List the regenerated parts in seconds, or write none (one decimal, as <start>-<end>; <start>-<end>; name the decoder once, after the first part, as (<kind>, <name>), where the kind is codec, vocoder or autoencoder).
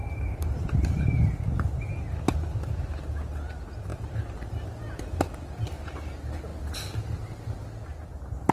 0.0-1.8 (vocoder, BigVGAN v2); 3.9-4.8